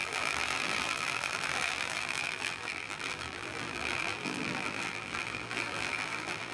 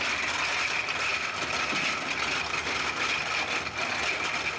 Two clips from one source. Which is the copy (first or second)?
first